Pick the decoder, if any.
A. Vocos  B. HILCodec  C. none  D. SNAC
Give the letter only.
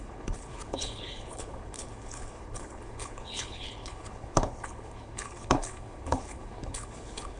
B